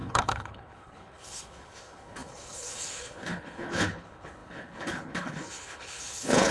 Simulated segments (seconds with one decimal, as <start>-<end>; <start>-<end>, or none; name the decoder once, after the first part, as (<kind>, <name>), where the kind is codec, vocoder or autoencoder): 0.0-6.5 (codec, HILCodec)